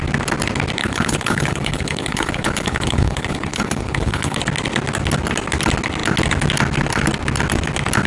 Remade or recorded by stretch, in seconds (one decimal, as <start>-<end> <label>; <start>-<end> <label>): 0.0-0.8 recorded; 0.8-4.4 remade; 4.4-8.1 recorded